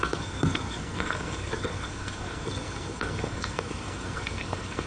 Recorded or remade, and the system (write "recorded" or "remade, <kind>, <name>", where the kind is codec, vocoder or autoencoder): remade, codec, SNAC